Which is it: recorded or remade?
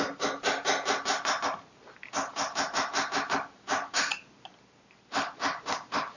recorded